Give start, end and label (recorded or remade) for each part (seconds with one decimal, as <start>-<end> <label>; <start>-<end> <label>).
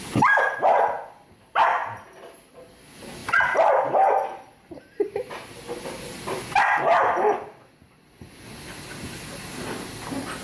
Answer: 0.0-10.4 recorded